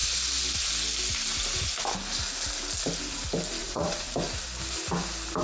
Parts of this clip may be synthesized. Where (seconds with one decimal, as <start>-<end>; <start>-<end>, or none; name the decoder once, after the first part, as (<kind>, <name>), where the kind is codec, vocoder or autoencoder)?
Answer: 3.6-4.1 (vocoder, Vocos)